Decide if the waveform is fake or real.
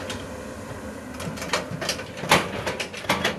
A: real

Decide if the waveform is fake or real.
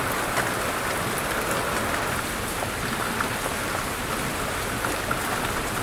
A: real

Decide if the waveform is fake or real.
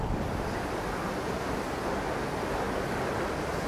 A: real